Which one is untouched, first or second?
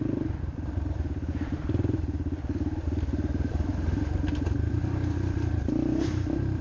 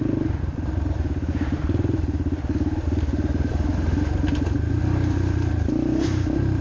second